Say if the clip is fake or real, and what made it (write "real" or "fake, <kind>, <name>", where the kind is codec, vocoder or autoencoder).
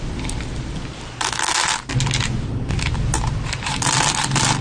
real